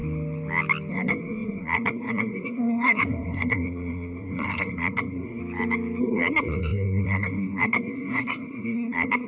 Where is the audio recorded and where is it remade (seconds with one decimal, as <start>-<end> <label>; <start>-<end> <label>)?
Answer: 0.0-0.9 recorded; 0.9-5.4 remade; 5.4-6.0 recorded; 6.0-9.3 remade